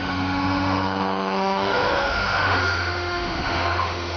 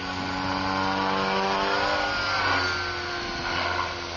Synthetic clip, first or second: first